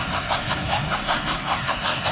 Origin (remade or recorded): remade